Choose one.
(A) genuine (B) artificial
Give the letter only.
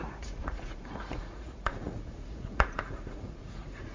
B